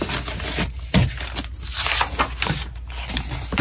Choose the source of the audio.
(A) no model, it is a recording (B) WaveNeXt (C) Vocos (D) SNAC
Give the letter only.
A